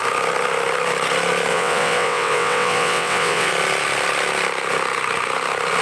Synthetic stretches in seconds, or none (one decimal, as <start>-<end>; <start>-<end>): 1.5-3.5